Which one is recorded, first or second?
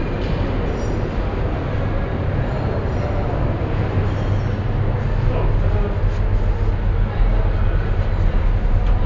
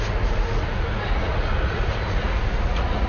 first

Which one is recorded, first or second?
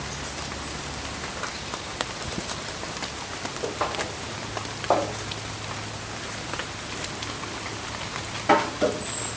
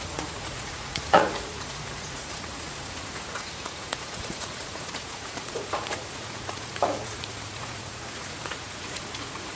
first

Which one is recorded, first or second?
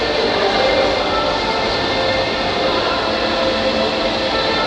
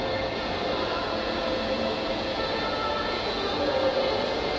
first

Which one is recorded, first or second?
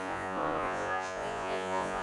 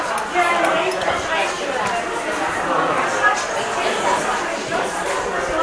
second